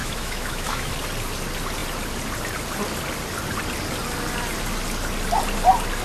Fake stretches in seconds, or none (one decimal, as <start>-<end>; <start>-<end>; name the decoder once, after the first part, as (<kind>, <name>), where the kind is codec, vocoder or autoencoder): 0.0-0.9 (autoencoder, DAC-VAE)